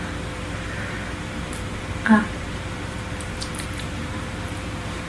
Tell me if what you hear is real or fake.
fake